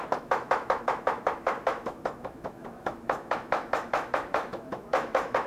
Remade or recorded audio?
remade